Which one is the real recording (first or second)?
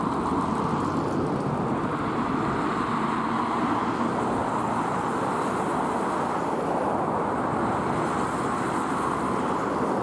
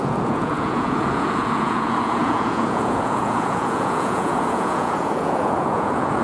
first